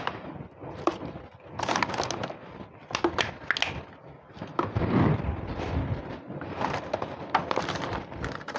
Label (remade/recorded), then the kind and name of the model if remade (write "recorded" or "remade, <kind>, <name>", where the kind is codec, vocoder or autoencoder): recorded